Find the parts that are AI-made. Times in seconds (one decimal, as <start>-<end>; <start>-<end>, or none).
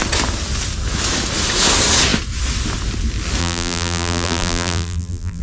3.4-5.4